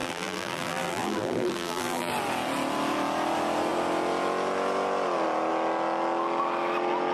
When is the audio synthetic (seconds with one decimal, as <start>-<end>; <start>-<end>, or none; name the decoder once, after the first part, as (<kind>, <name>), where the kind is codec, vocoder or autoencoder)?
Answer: 0.0-2.1 (vocoder, BigVGAN v2)